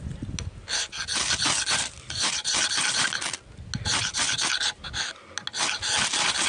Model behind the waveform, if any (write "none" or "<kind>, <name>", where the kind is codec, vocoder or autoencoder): none